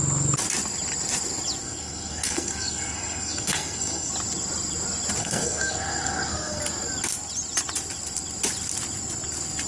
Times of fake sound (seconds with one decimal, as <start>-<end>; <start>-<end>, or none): 1.6-4.1; 5.2-6.6